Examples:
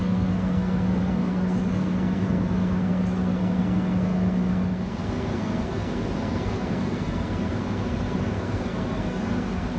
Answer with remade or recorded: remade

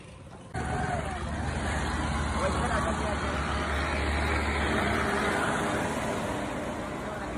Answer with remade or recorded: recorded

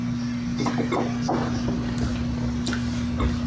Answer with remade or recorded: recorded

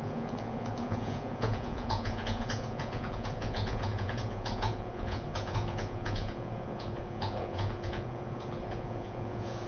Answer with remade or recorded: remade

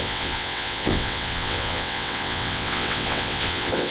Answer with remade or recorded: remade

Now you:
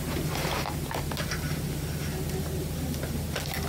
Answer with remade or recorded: recorded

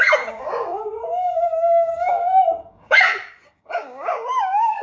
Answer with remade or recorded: remade